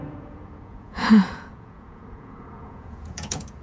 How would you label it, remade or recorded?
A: remade